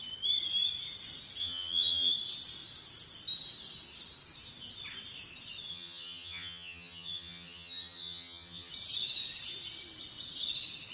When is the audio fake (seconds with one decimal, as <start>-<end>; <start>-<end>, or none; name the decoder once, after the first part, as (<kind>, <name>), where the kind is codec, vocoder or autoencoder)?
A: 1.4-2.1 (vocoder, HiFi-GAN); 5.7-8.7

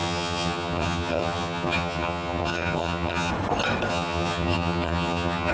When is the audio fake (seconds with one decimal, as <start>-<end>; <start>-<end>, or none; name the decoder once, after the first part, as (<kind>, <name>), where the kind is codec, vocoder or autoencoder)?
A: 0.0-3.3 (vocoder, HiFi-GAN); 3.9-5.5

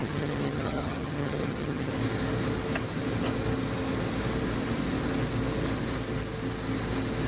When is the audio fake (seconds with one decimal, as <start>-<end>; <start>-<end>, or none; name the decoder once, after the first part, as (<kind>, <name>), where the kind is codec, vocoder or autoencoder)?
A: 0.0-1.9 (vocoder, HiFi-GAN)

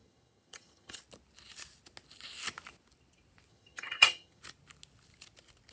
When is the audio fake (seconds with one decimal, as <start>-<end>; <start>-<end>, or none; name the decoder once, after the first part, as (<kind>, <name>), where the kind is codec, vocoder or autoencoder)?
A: 0.0-1.0 (vocoder, HiFi-GAN); 3.5-4.4